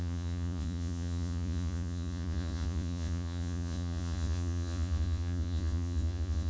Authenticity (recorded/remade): remade